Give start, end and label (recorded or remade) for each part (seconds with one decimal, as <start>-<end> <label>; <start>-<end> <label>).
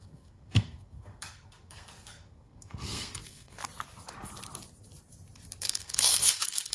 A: 0.0-3.6 remade; 3.6-5.6 recorded; 5.6-6.7 remade